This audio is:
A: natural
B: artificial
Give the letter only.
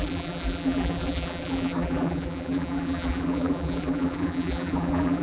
B